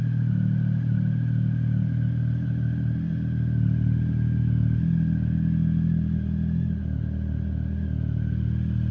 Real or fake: real